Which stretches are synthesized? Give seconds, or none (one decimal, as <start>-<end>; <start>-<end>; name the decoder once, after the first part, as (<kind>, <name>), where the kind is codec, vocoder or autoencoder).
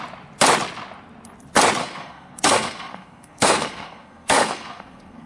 1.8-5.3 (codec, SNAC)